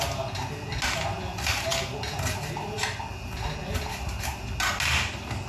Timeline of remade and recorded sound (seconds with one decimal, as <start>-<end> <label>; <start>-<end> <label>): 0.0-5.5 recorded